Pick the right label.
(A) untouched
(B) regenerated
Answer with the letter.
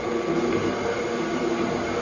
A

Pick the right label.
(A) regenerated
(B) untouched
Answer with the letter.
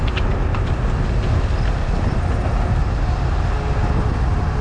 B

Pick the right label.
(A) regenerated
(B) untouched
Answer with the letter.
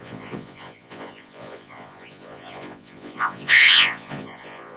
A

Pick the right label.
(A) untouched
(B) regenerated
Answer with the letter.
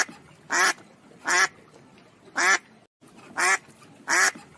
A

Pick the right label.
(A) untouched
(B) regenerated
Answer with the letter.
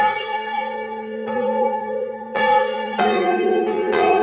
B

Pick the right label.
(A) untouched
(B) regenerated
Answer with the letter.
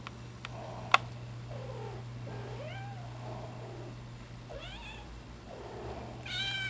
A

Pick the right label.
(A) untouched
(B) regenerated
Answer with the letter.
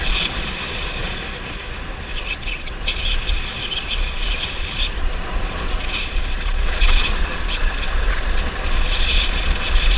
B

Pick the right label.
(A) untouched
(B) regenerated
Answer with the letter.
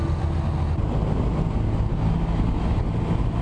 A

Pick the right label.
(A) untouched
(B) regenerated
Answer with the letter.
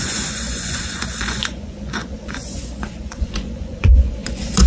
B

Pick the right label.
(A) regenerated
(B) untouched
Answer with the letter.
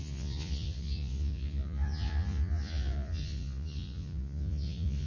A